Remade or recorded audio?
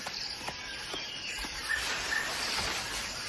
recorded